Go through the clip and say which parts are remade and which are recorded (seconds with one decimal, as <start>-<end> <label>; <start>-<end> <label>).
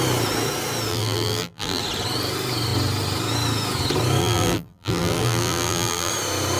0.0-0.9 recorded; 0.9-1.8 remade; 1.8-4.2 recorded; 4.2-6.1 remade; 6.1-6.6 recorded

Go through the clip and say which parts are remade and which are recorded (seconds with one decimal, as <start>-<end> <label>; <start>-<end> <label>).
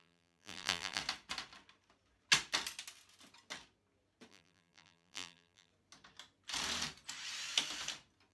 0.0-1.0 remade; 1.0-4.3 recorded; 4.3-5.7 remade; 5.7-8.3 recorded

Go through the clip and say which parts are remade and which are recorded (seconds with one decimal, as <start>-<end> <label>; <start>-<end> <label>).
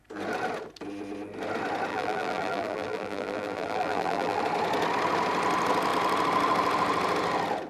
0.0-1.9 recorded; 1.9-4.4 remade; 4.4-7.7 recorded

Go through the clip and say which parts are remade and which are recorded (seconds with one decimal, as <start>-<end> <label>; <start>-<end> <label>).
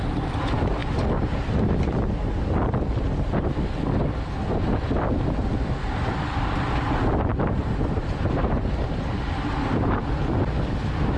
0.0-7.3 recorded; 7.3-10.0 remade; 10.0-11.2 recorded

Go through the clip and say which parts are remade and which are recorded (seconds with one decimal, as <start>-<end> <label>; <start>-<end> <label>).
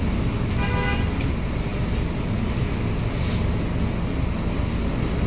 0.0-5.3 recorded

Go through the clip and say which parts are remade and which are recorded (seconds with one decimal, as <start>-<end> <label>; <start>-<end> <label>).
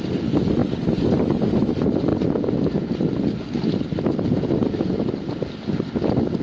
0.0-6.4 recorded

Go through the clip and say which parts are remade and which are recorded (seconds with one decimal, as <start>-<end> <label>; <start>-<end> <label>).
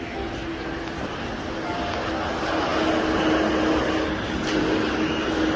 0.0-5.6 recorded